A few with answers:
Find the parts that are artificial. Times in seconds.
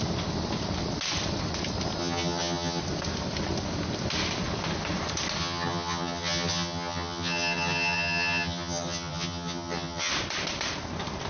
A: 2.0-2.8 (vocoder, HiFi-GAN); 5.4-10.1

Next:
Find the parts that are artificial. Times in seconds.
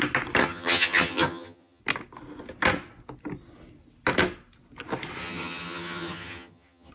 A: 0.4-1.8 (vocoder, HiFi-GAN); 5.2-6.9